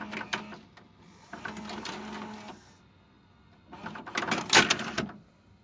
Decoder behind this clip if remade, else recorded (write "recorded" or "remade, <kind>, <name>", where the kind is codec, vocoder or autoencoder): recorded